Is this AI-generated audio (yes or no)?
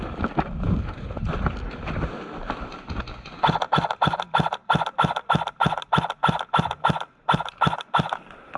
no